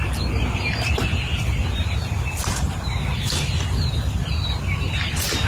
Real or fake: real